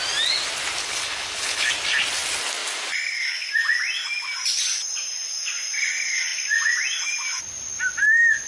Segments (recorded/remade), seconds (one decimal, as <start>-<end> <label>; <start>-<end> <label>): 0.0-0.8 recorded; 0.8-1.7 remade; 1.7-8.5 recorded